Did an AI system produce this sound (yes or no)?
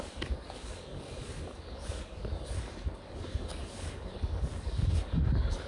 yes